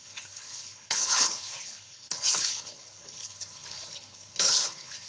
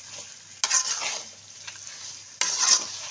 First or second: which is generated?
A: first